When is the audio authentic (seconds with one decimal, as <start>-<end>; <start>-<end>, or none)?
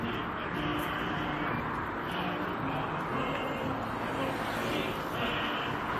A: 0.0-6.0